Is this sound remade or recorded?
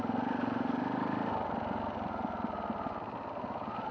recorded